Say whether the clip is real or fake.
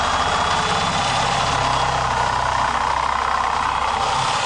real